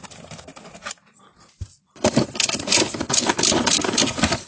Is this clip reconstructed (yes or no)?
no